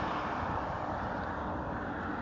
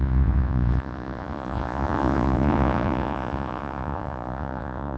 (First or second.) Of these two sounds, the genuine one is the first